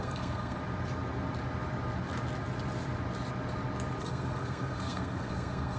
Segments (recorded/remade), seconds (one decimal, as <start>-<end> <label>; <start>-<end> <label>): 0.0-0.6 remade; 0.6-4.0 recorded; 4.0-5.8 remade